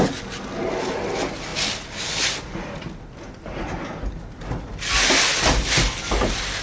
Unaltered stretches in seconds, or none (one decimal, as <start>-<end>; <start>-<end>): 0.0-6.6